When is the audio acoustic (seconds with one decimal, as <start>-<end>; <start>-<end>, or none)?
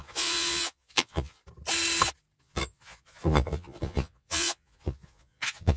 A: 1.4-2.4